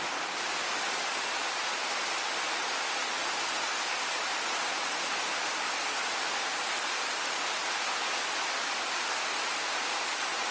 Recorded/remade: recorded